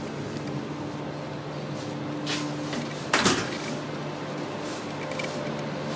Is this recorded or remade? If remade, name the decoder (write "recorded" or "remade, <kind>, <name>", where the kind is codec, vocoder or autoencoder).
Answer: recorded